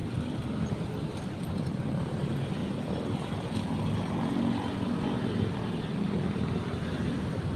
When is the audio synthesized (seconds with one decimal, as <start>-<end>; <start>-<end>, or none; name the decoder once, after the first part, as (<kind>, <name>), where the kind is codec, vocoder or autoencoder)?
0.0-1.7 (vocoder, BigVGAN v2)